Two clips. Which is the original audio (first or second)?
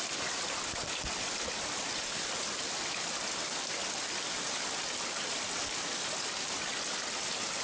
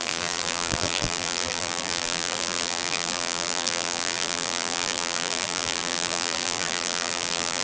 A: first